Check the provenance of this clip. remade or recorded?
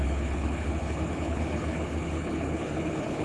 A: remade